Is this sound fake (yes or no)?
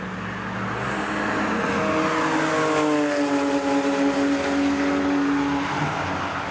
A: no